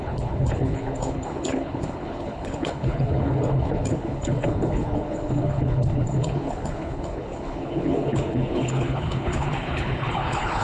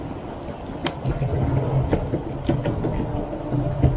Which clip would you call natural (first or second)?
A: second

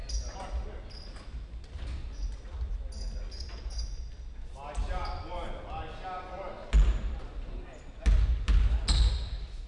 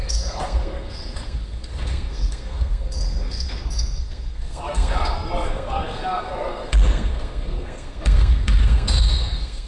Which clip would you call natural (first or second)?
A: first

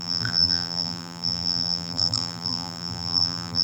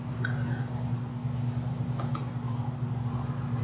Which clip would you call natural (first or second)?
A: second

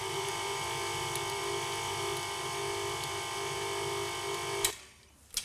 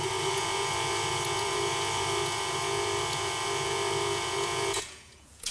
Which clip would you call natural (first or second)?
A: first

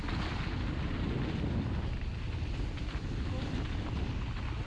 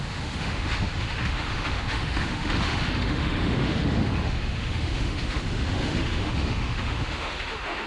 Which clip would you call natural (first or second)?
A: first